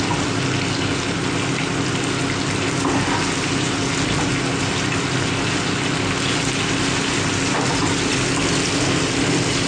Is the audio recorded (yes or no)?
yes